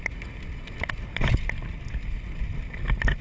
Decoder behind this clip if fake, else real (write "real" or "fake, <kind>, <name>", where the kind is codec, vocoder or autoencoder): real